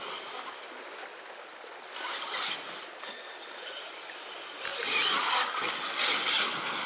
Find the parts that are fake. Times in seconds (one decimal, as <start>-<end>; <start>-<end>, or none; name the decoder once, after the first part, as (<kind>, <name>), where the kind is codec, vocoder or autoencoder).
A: none

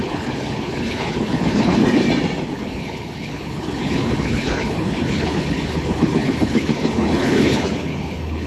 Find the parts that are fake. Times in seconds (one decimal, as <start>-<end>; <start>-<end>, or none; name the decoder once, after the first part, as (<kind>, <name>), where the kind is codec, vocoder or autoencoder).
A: 0.0-1.8 (codec, HILCodec); 2.5-8.5